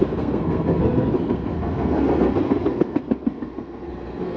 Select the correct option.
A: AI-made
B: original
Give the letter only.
A